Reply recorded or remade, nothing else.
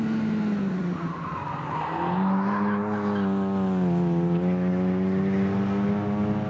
recorded